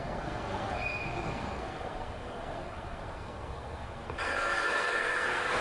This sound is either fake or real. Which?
fake